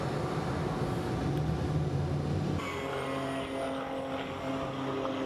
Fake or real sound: real